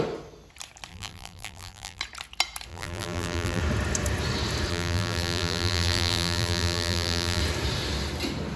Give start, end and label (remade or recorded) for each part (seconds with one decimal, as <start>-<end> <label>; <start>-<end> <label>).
0.0-0.9 recorded; 0.9-2.0 remade; 2.0-2.7 recorded; 2.7-3.6 remade; 3.6-4.7 recorded; 4.7-7.4 remade; 7.4-8.6 recorded